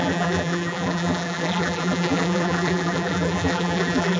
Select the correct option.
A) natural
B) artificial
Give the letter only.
B